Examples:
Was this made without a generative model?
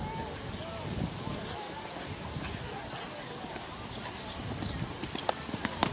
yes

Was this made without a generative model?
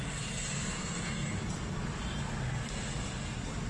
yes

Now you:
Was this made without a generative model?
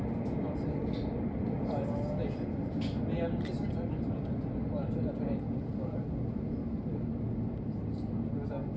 yes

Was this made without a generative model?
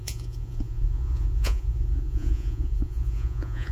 no